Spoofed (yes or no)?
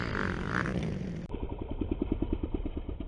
yes